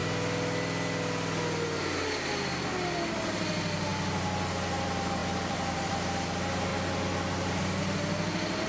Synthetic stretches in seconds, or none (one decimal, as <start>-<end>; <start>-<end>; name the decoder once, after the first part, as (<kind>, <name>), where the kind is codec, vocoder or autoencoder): 5.2-5.9 (vocoder, BigVGAN v2)